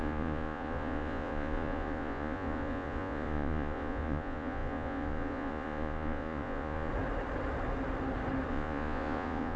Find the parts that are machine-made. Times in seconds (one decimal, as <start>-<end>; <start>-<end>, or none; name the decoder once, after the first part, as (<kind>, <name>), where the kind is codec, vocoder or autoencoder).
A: 0.0-6.9 (vocoder, Vocos); 8.5-9.6

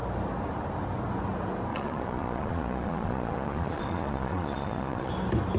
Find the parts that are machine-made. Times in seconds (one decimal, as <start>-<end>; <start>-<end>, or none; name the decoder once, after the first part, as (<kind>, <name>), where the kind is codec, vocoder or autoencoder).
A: 1.7-5.1 (vocoder, Vocos)